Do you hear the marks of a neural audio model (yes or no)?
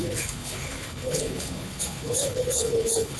yes